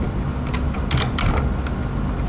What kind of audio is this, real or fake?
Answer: fake